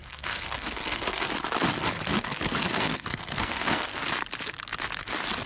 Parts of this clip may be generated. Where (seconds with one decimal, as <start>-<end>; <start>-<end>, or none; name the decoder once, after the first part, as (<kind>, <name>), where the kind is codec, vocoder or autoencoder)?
0.0-1.3 (codec, SNAC); 2.1-4.0